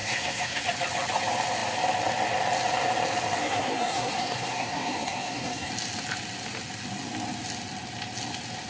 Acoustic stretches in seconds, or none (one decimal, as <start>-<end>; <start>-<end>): 0.6-3.4; 5.7-8.7